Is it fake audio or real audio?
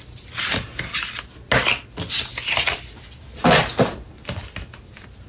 real